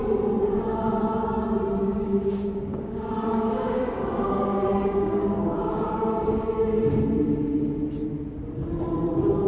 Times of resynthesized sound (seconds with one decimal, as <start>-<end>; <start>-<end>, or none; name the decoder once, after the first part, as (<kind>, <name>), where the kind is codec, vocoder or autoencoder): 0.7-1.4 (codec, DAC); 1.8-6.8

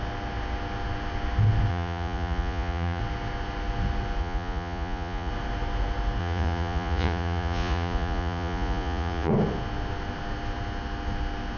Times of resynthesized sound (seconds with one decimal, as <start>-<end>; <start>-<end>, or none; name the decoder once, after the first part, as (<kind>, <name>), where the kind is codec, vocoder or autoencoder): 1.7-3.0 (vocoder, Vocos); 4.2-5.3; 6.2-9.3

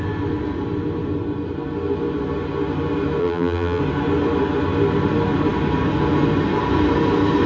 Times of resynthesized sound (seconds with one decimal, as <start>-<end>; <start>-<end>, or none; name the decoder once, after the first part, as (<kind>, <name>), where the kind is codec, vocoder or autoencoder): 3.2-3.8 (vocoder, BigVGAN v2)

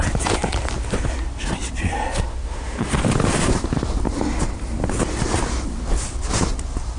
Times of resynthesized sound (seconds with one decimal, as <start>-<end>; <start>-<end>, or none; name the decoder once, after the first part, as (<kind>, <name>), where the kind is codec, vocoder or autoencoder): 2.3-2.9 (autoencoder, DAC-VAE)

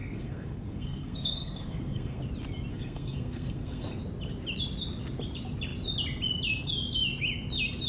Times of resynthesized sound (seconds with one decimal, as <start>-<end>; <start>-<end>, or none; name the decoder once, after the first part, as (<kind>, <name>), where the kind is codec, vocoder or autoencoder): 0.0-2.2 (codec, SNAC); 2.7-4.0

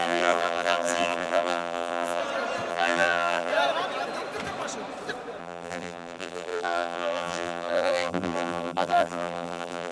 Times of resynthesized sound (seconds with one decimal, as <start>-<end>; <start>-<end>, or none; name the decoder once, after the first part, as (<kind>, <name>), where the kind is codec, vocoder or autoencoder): 0.0-2.2 (vocoder, BigVGAN v2); 2.7-3.5; 5.4-9.9